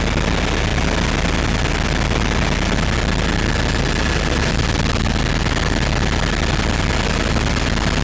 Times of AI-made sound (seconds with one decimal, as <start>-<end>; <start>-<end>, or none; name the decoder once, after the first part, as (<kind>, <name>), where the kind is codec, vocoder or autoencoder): none